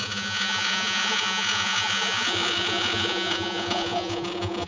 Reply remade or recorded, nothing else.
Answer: remade